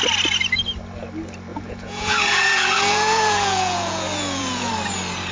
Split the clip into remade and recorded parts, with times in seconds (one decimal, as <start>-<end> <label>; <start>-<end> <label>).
0.0-1.5 recorded; 1.5-4.7 remade; 4.7-5.3 recorded